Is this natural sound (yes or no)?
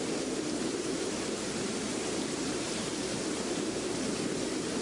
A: no